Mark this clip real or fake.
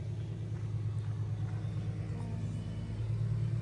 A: real